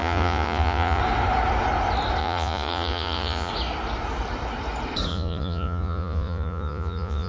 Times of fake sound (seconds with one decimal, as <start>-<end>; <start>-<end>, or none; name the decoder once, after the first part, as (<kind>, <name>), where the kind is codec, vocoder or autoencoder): 0.0-1.0 (vocoder, Vocos); 2.2-3.5; 5.1-7.3